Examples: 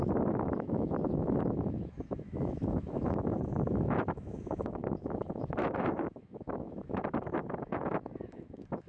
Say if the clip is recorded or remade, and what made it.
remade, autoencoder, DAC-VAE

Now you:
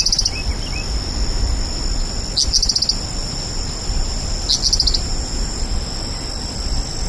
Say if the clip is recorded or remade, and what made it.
recorded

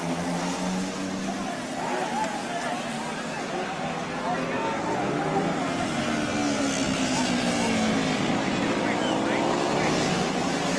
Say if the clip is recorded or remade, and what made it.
recorded